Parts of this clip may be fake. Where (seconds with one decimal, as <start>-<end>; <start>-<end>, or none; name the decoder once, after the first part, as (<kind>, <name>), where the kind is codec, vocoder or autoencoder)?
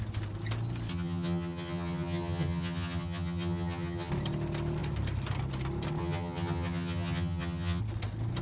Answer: 0.9-4.1 (vocoder, HiFi-GAN); 6.0-7.8